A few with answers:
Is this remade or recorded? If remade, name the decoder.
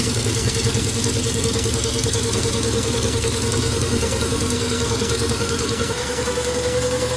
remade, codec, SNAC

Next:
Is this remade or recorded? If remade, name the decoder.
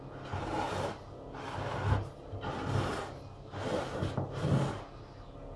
recorded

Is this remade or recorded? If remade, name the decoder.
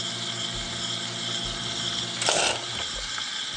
recorded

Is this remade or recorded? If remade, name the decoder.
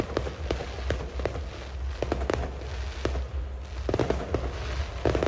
recorded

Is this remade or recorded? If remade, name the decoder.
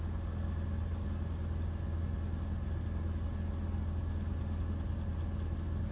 recorded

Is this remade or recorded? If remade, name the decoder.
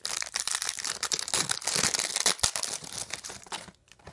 recorded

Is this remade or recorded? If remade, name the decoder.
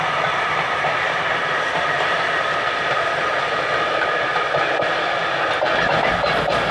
recorded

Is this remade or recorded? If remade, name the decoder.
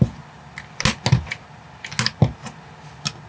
recorded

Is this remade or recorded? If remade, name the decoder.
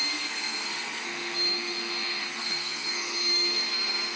remade, codec, SNAC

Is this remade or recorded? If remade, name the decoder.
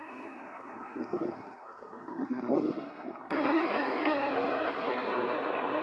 remade, codec, SNAC